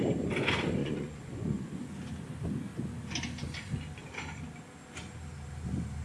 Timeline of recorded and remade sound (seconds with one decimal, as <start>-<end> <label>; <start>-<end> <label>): 0.0-0.8 recorded; 0.8-1.8 remade; 1.8-6.0 recorded